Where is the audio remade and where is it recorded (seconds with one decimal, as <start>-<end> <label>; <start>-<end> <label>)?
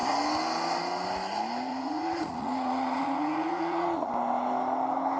0.0-1.7 recorded; 1.7-4.1 remade; 4.1-5.2 recorded